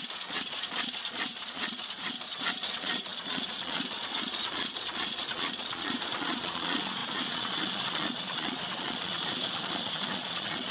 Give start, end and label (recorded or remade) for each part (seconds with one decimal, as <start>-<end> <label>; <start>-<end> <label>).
0.0-10.7 remade